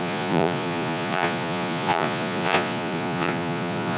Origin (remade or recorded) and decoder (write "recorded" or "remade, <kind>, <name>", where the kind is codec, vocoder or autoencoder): remade, vocoder, Vocos